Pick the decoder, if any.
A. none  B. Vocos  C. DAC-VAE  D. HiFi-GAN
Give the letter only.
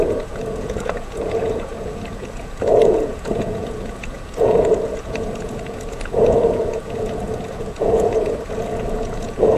B